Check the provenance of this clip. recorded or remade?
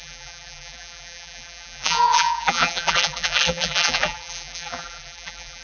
remade